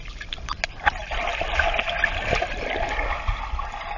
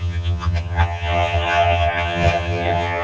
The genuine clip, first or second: first